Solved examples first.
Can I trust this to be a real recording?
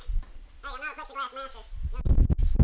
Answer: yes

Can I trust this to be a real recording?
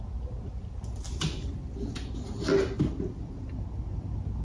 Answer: yes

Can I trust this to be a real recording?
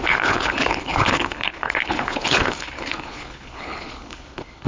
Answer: no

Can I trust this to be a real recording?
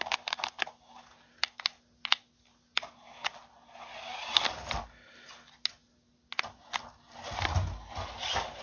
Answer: yes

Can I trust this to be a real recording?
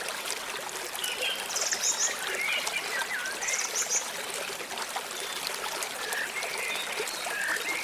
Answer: yes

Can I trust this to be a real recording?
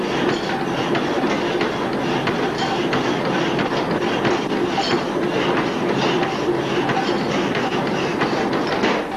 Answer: yes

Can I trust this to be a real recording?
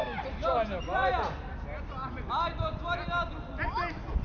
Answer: yes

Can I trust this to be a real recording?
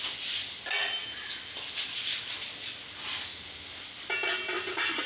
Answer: yes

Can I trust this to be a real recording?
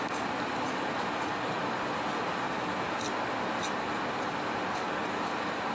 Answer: yes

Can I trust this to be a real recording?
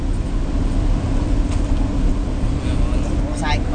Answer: yes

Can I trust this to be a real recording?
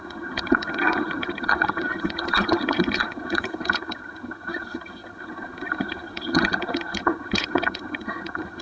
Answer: no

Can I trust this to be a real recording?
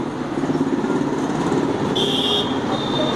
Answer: yes